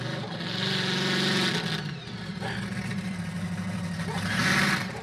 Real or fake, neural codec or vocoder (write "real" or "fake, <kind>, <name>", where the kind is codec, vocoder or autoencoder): real